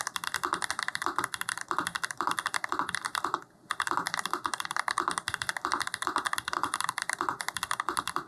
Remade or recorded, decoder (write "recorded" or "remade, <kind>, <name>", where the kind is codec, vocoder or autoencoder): recorded